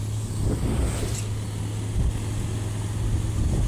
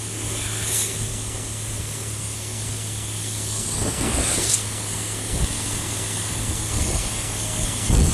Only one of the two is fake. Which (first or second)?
second